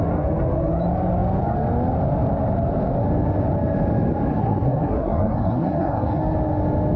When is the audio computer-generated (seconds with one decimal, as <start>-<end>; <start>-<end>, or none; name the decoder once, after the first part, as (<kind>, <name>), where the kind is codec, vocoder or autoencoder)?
4.3-6.2 (codec, SNAC)

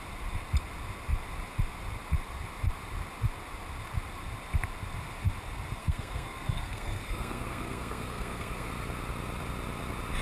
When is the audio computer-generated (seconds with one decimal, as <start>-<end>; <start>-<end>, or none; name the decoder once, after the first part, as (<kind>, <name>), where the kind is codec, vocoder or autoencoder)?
5.8-8.7 (codec, SNAC)

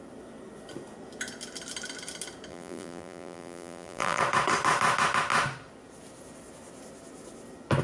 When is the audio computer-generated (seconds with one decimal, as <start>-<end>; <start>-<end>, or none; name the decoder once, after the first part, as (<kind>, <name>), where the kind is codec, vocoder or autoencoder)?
2.5-4.2 (vocoder, BigVGAN v2)

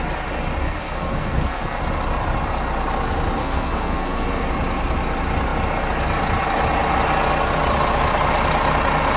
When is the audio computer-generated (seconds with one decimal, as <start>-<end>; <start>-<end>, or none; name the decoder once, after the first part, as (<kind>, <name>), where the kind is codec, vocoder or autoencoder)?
0.6-1.8 (codec, SNAC); 3.4-4.5

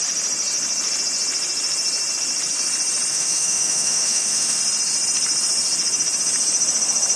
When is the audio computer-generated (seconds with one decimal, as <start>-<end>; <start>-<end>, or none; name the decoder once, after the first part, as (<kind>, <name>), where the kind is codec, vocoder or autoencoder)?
3.1-4.6 (autoencoder, DAC-VAE)

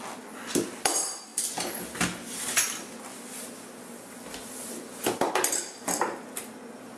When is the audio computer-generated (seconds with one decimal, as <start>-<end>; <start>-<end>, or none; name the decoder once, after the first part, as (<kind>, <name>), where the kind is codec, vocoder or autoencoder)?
none

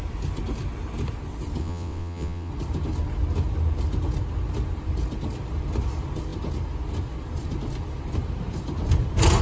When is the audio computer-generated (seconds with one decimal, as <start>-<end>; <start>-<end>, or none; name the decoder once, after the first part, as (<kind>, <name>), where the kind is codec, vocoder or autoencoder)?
1.6-2.5 (vocoder, WaveNeXt)

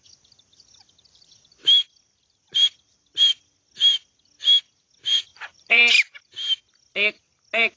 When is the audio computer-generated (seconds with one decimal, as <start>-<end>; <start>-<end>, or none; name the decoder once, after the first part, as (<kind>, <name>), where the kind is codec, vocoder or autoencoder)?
5.3-5.9 (vocoder, Vocos)